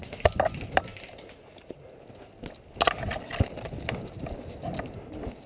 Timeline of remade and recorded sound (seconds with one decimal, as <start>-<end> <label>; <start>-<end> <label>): 0.0-5.5 recorded